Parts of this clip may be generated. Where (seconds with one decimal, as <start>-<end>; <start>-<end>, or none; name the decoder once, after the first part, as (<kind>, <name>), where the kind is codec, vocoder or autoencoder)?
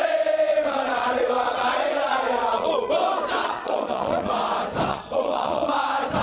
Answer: 0.5-2.9 (vocoder, Vocos); 3.4-4.3; 4.9-5.7